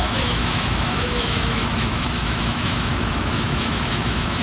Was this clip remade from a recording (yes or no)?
yes